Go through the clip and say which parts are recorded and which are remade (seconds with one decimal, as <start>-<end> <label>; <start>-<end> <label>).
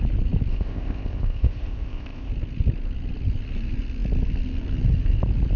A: 0.0-0.5 recorded; 0.5-2.3 remade; 2.3-5.6 recorded